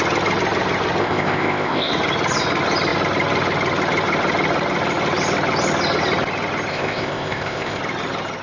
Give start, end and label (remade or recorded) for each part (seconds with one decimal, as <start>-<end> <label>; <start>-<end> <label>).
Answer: 0.0-1.0 recorded; 1.0-1.9 remade; 1.9-6.7 recorded; 6.7-7.8 remade; 7.8-8.4 recorded